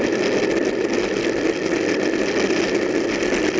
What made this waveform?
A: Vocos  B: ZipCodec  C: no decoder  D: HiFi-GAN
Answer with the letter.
C